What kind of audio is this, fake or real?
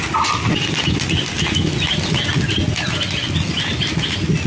real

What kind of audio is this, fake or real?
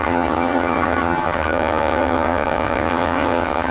fake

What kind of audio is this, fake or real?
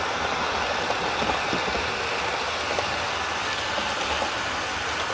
real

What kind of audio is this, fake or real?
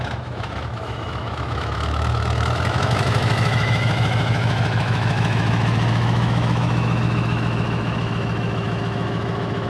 fake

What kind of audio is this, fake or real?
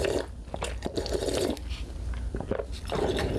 real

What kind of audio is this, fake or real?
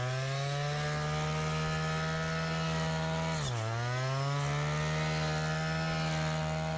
real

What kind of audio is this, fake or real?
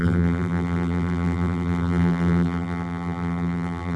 fake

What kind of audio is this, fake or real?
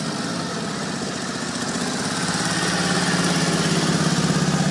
real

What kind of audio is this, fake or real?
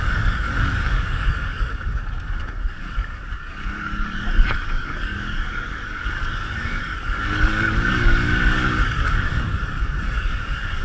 fake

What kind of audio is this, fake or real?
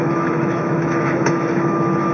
fake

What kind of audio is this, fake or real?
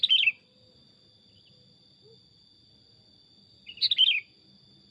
real